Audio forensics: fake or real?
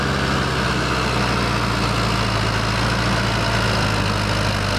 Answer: real